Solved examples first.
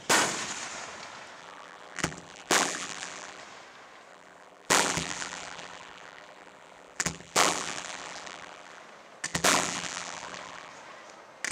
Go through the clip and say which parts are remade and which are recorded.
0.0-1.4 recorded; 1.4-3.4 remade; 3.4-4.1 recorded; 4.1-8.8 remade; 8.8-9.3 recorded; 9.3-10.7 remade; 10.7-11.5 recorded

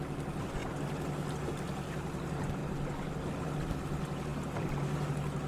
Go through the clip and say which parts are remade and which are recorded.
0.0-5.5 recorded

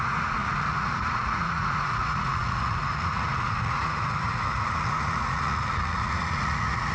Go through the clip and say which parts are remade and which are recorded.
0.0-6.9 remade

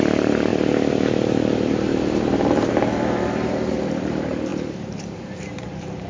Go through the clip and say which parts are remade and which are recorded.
0.0-6.1 remade